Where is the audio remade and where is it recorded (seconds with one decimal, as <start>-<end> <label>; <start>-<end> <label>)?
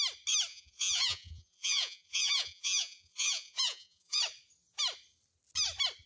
0.0-0.5 recorded; 0.5-4.2 remade; 4.2-6.1 recorded